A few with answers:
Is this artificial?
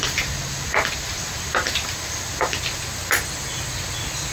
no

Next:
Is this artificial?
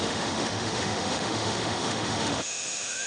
yes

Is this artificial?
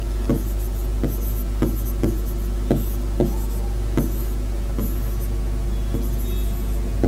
no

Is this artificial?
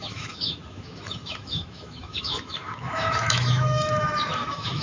yes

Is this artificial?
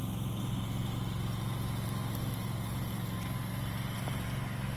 no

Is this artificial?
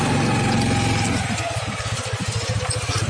no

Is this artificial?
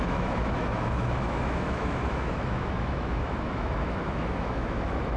yes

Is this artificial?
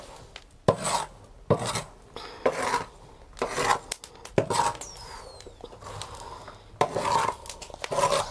no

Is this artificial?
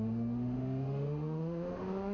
yes